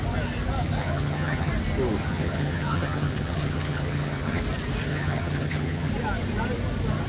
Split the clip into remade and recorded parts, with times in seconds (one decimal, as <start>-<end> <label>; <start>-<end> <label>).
0.0-0.8 recorded; 0.8-1.5 remade; 1.5-2.0 recorded; 2.0-4.4 remade; 4.4-4.9 recorded; 4.9-5.9 remade; 5.9-7.1 recorded